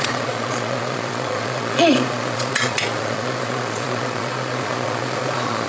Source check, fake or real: fake